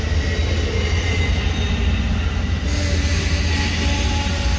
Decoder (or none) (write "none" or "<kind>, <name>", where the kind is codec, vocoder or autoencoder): none